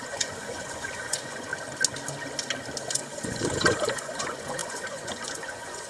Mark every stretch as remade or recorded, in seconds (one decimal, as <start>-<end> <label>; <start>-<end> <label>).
0.0-1.5 remade; 1.5-2.9 recorded; 2.9-5.9 remade